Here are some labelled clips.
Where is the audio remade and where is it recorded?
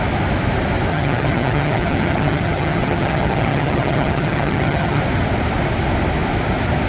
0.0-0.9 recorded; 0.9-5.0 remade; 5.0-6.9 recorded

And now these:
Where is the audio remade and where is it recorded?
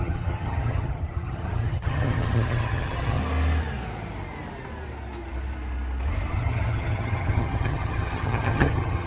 0.0-3.2 remade; 3.2-6.3 recorded; 6.3-9.1 remade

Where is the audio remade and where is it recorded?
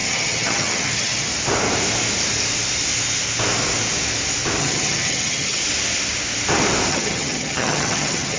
0.0-1.3 remade; 1.3-4.6 recorded; 4.6-5.6 remade; 5.6-6.9 recorded; 6.9-8.4 remade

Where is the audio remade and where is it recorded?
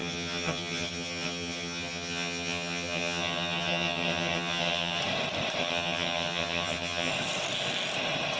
0.0-5.0 remade; 5.0-5.6 recorded; 5.6-7.1 remade; 7.1-8.4 recorded